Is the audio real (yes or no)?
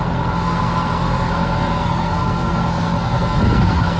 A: no